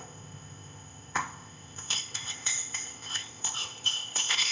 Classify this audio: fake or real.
fake